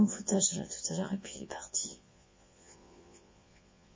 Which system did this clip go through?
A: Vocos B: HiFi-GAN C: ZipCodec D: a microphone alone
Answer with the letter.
A